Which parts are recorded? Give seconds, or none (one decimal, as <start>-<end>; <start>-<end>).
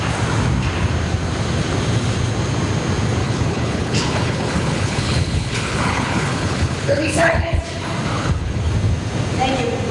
0.0-3.2; 7.6-8.1; 8.7-9.9